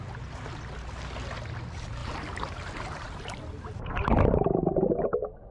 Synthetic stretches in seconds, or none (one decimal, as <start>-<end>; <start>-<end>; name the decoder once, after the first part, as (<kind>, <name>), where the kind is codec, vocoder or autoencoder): 2.0-4.8 (vocoder, BigVGAN v2)